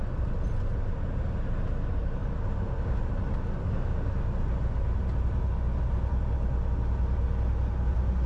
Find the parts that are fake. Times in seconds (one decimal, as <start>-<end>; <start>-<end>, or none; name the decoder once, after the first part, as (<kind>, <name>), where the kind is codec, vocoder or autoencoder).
none